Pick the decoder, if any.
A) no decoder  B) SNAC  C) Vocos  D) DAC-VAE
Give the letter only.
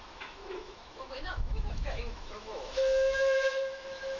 D